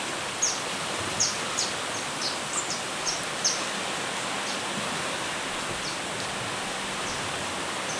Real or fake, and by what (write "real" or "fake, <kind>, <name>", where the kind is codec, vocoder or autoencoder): real